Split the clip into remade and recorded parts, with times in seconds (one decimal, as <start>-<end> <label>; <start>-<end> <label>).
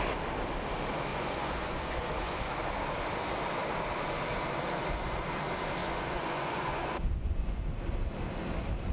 0.0-1.1 recorded; 1.1-2.5 remade; 2.5-5.8 recorded; 5.8-7.6 remade; 7.6-8.9 recorded